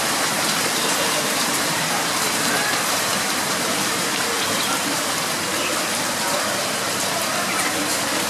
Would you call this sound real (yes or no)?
no